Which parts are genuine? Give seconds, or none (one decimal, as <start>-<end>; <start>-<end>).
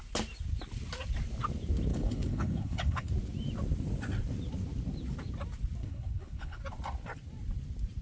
0.0-1.9; 3.1-5.8; 6.6-8.0